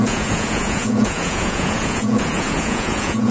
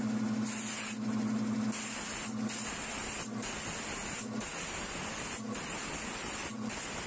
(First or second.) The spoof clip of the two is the first